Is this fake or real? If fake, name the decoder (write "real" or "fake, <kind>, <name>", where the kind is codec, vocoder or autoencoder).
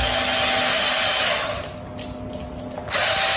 real